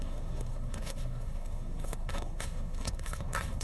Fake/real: fake